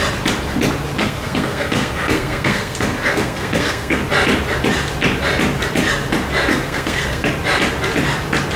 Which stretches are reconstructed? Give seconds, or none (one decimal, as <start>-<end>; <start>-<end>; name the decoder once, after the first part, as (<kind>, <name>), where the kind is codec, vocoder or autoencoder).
1.0-4.0 (codec, SNAC); 6.5-7.3